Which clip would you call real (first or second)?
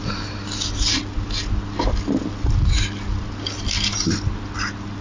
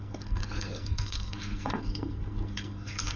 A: first